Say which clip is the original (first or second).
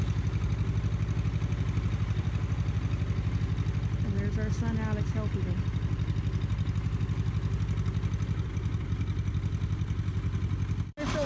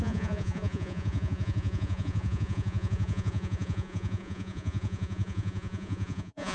first